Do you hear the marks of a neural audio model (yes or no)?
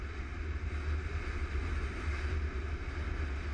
no